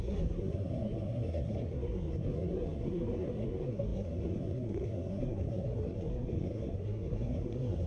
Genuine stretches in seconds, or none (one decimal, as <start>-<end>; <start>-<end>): none

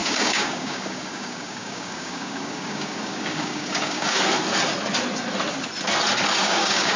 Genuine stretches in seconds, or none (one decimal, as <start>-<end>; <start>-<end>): 4.2-6.4

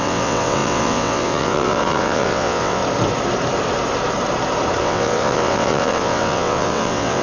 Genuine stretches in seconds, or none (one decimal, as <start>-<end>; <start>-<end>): 2.8-4.8

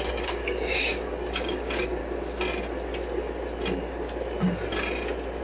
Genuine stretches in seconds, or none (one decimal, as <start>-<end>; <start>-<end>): 2.0-5.4

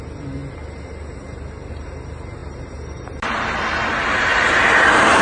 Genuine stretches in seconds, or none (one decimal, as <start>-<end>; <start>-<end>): 0.0-5.2

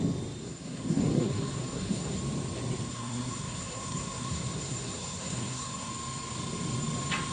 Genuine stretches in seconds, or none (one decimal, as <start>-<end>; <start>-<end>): 0.0-0.4; 2.2-2.9; 5.9-7.3